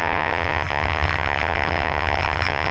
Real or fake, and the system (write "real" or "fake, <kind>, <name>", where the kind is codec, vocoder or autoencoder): fake, vocoder, HiFi-GAN